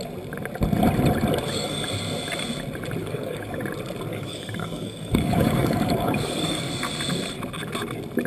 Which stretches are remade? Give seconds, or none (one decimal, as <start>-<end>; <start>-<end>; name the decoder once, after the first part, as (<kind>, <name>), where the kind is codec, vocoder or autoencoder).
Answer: 3.0-3.6 (codec, DAC); 4.1-6.7